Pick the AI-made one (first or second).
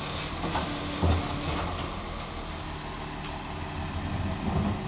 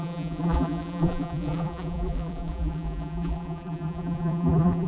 second